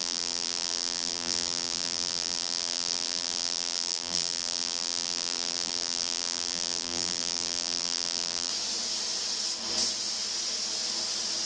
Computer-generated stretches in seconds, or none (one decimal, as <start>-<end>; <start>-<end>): 0.0-8.5

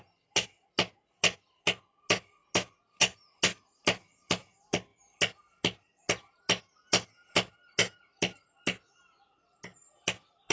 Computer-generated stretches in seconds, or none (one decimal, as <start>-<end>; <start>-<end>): none

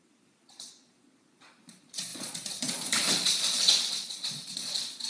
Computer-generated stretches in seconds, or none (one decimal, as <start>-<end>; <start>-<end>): 0.0-5.1

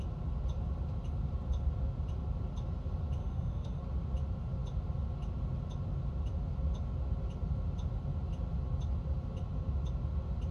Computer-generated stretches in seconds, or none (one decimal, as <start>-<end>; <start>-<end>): 3.2-3.8

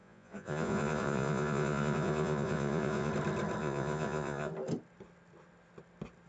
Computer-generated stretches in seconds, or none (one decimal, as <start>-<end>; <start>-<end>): 0.0-3.1; 3.6-4.5